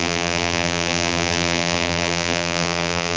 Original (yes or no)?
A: no